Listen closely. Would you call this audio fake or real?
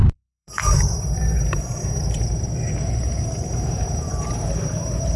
fake